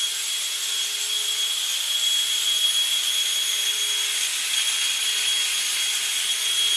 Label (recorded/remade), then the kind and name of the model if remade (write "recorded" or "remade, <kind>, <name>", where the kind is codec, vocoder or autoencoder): recorded